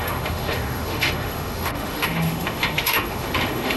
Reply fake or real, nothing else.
fake